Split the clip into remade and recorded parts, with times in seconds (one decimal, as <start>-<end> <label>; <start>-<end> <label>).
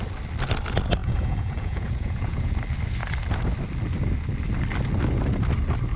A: 0.0-1.0 recorded; 1.0-2.5 remade; 2.5-6.0 recorded